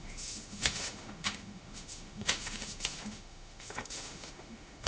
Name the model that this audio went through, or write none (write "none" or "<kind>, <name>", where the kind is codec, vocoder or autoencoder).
autoencoder, DAC-VAE